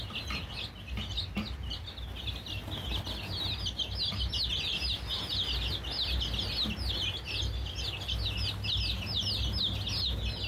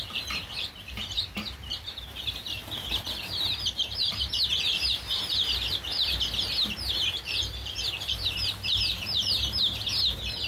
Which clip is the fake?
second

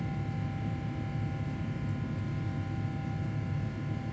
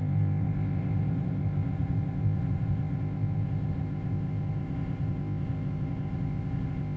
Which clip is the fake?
second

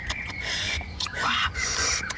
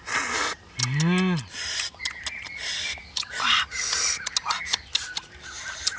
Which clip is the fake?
first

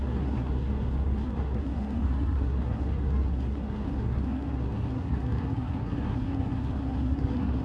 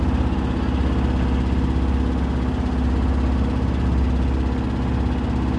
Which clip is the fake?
first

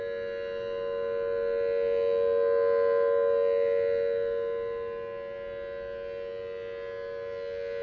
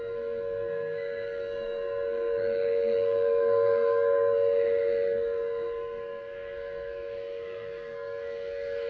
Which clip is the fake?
second